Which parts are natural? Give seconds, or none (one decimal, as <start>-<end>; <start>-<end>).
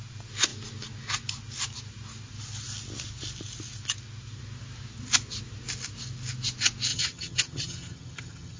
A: 0.0-6.9